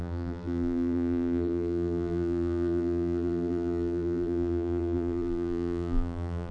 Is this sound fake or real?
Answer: fake